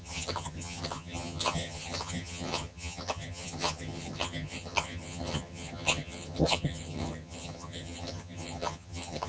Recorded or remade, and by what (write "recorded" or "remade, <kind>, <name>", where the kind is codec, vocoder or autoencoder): remade, vocoder, HiFi-GAN